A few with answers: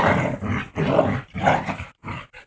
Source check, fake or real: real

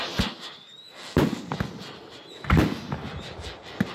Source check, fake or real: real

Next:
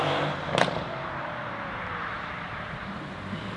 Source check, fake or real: fake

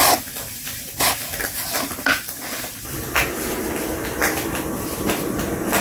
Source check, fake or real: real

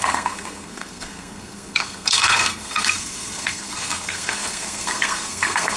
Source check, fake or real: fake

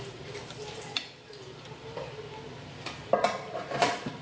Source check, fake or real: fake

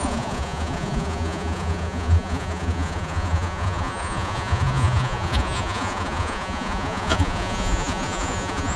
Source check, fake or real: fake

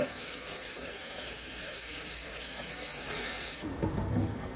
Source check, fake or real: fake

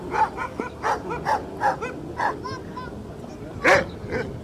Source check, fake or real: real